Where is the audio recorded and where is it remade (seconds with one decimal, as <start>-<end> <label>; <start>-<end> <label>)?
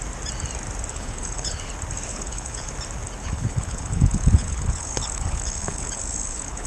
0.0-0.9 recorded; 0.9-1.7 remade; 1.7-2.1 recorded; 2.1-2.7 remade; 2.7-3.2 recorded; 3.2-6.7 remade